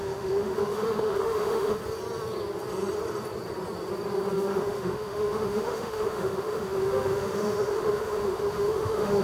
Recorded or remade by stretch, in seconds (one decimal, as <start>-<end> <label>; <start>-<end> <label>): 0.0-1.8 remade; 1.8-4.3 recorded; 4.3-9.2 remade

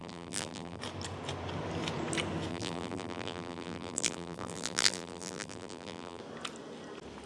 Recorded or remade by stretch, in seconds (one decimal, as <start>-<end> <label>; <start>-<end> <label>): 0.0-0.8 remade; 0.8-2.5 recorded; 2.5-6.2 remade; 6.2-7.3 recorded

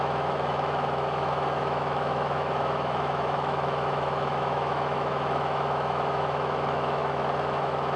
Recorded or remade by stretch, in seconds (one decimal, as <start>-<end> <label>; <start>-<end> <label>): 0.0-8.0 remade

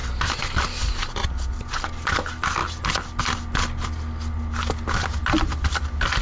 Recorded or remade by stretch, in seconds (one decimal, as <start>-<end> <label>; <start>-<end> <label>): 0.0-6.2 recorded

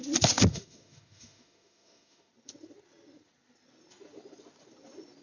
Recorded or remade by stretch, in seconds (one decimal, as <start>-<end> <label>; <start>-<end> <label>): 0.0-0.5 recorded; 0.5-2.3 remade; 2.3-5.2 recorded

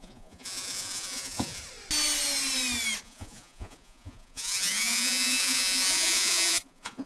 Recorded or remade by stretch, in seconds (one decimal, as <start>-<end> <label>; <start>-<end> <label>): 0.0-1.6 remade; 1.6-3.0 recorded; 3.0-7.1 remade

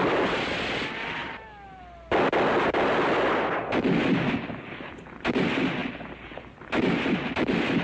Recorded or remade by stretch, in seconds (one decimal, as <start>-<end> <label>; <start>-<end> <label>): 0.0-7.8 recorded

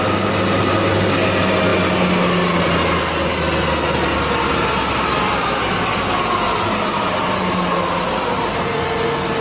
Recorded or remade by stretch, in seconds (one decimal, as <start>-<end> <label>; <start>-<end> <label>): 0.0-9.4 recorded